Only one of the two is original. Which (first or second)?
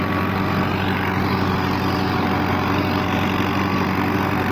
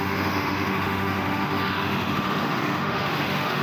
first